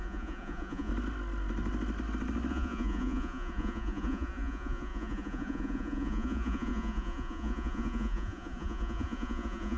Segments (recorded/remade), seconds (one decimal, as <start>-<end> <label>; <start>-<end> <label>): 0.0-0.9 remade; 0.9-2.5 recorded; 2.5-9.8 remade